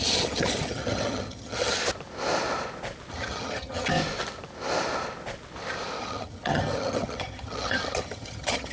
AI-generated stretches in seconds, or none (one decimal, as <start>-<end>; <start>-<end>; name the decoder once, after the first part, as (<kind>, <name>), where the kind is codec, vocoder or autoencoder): 0.0-1.8 (vocoder, HiFi-GAN); 3.1-3.9; 6.0-8.7